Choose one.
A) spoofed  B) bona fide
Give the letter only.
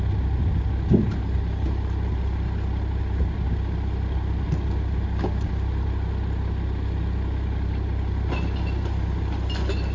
B